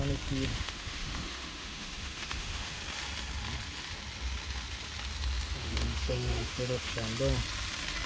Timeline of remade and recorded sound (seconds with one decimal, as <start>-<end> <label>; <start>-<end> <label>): 0.0-0.5 recorded; 0.5-2.8 remade; 2.8-5.6 recorded; 5.6-6.9 remade; 6.9-8.1 recorded